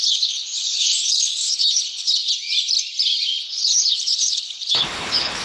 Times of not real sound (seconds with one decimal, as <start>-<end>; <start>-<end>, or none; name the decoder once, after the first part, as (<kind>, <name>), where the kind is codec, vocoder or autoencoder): 0.0-2.2 (codec, HILCodec); 3.4-5.4